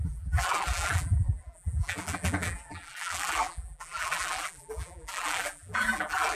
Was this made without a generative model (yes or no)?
no